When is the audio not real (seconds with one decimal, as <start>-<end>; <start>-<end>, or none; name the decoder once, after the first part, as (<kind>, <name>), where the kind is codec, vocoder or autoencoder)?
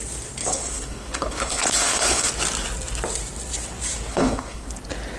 0.4-2.3 (codec, HILCodec); 4.1-4.7